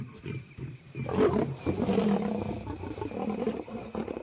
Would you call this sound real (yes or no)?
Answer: yes